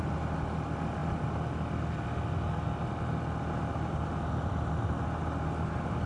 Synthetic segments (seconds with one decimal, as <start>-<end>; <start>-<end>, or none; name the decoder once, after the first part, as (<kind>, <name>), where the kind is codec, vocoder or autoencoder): none

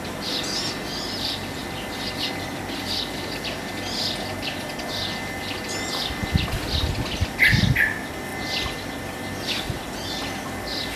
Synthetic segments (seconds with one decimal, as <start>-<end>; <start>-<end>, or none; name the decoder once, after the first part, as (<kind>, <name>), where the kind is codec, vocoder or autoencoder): none

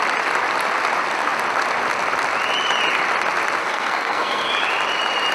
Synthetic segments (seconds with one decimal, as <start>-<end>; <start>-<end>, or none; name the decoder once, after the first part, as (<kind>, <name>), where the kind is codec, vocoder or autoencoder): 3.6-4.5 (codec, SNAC)

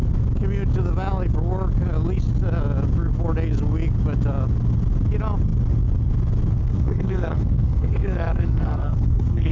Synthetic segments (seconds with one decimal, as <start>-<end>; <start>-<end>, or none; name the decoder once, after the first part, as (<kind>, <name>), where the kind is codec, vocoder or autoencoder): 6.5-9.5 (codec, SNAC)

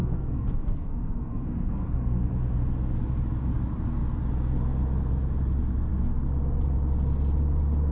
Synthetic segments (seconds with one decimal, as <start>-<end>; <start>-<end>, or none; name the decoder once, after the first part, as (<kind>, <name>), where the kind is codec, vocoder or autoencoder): 0.0-2.3 (codec, SNAC)

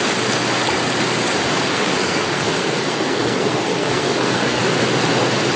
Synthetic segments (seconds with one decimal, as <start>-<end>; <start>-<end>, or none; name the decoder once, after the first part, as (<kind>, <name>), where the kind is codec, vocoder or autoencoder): 1.7-4.6 (codec, SNAC)

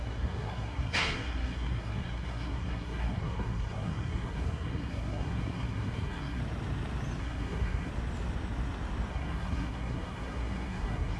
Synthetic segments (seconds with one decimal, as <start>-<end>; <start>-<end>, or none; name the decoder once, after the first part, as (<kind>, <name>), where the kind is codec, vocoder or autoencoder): 0.0-6.4 (codec, SNAC); 7.2-7.9; 9.1-11.2

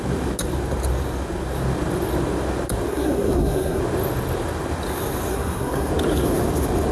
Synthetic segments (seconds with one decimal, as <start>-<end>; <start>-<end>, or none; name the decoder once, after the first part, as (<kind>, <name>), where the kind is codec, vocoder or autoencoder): 2.9-3.8 (codec, SNAC); 5.3-5.9